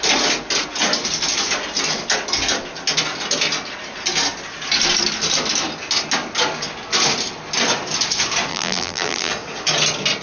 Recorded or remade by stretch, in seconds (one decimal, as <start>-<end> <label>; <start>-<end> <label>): 0.0-8.5 recorded; 8.5-9.3 remade; 9.3-10.2 recorded